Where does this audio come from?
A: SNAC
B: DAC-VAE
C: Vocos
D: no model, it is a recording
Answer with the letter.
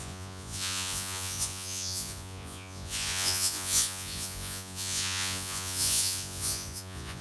C